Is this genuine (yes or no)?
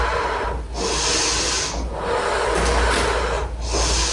yes